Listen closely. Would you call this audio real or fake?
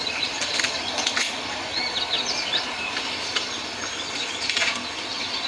real